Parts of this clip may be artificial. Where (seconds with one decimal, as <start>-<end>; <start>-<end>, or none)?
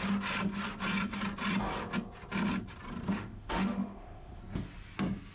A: 3.1-4.4